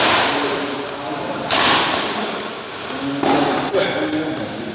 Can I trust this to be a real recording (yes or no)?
yes